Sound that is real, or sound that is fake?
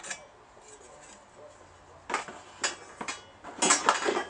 real